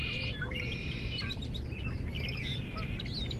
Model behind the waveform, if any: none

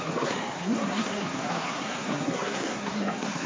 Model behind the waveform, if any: codec, SNAC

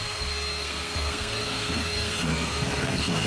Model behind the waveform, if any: codec, SNAC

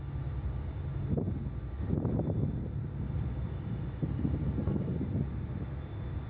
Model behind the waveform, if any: none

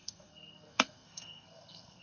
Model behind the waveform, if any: codec, SNAC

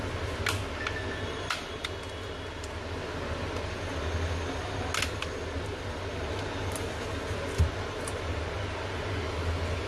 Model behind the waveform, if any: none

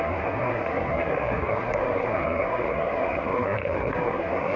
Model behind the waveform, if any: codec, SNAC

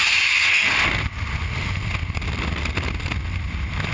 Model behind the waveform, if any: none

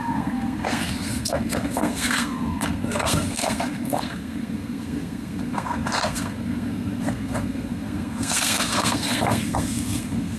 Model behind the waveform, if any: codec, SNAC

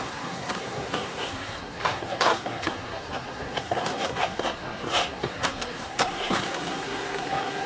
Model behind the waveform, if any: codec, SNAC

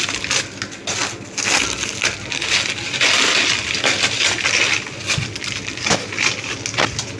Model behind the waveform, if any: none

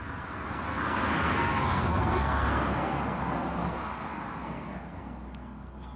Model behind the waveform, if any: codec, SNAC